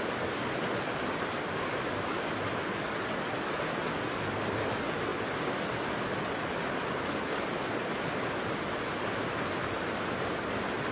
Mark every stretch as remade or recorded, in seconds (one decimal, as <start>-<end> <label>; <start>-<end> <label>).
0.0-1.4 recorded; 1.4-2.3 remade; 2.3-10.9 recorded